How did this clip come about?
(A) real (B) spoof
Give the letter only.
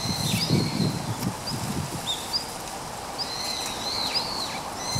A